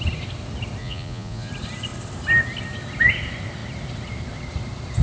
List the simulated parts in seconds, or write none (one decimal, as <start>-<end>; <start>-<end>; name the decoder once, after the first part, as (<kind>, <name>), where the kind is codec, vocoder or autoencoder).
0.8-1.5 (vocoder, Vocos)